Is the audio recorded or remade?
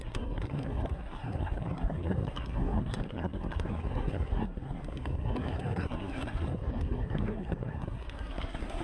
remade